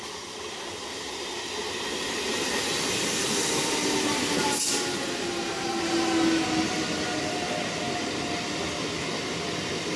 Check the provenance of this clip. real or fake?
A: real